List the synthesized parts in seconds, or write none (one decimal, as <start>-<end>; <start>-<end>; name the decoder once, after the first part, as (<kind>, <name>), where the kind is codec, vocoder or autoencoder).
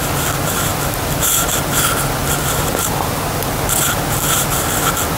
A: none